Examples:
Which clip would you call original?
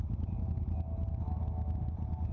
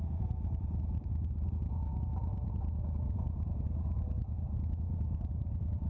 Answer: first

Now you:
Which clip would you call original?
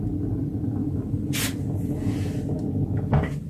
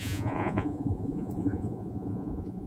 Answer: first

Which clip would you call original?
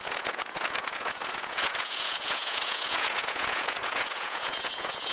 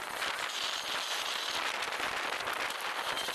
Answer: second